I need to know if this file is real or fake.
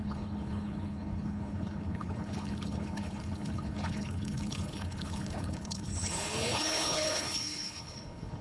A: fake